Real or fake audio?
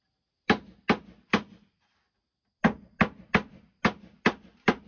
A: real